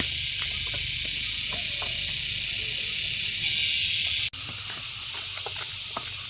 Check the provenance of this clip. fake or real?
real